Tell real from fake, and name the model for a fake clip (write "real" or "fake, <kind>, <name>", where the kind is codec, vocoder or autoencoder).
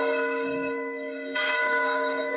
fake, codec, SNAC